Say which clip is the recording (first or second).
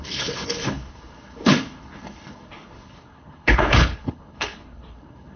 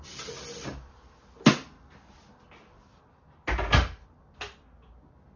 second